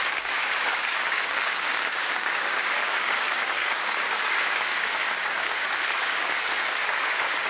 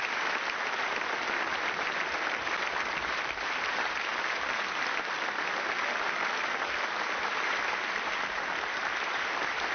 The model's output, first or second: first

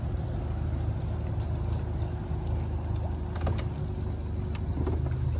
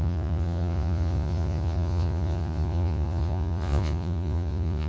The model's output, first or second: second